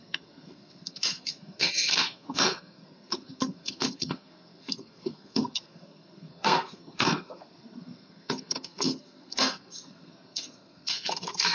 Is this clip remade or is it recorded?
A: remade